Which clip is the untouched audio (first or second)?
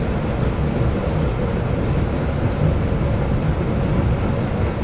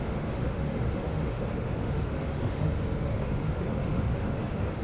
first